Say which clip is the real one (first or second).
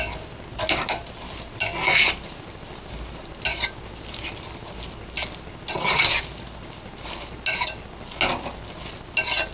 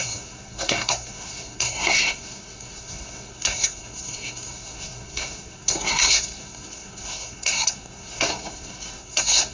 first